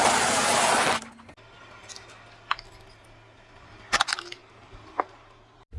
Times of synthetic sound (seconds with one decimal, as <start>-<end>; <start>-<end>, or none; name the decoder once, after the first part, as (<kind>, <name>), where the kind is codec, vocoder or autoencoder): 0.0-0.4 (vocoder, BigVGAN v2); 3.9-4.4; 5.0-5.8